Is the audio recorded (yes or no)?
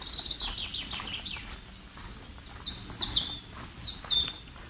yes